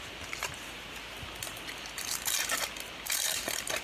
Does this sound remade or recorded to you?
recorded